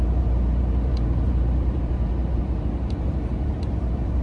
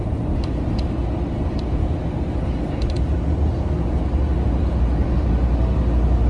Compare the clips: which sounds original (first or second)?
second